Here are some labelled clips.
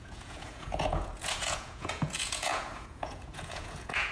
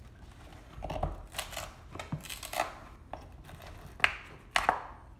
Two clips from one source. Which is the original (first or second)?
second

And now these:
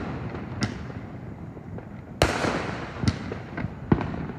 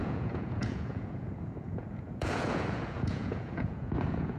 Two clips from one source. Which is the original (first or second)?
first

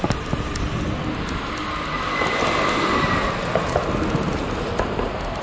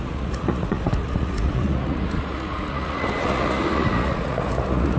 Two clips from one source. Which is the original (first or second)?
first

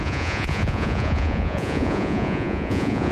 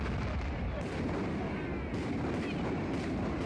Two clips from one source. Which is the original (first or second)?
second